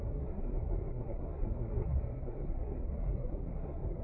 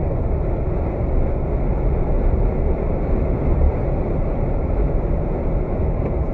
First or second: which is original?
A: second